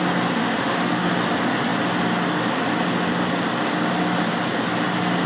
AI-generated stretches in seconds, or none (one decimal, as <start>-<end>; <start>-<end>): 0.4-1.1